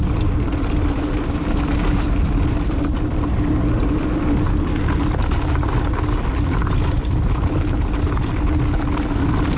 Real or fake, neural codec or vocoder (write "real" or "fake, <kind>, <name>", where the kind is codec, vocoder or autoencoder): real